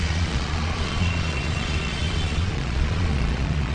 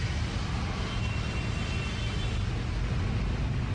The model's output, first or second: first